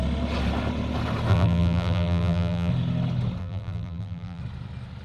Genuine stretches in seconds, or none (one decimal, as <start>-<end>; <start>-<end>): 0.0-1.3; 2.7-3.4; 4.4-5.0